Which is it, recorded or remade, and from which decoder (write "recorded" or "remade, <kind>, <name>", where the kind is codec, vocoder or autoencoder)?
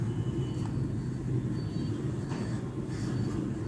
recorded